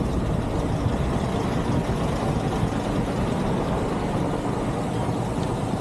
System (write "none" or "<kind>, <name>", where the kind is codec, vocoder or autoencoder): none